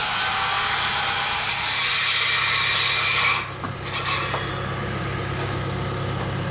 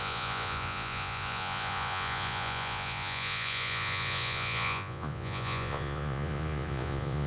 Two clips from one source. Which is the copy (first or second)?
second